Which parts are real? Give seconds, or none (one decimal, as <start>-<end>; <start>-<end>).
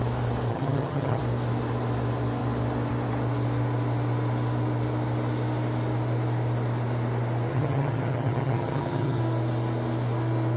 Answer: 0.0-0.5; 1.2-7.5; 9.2-10.6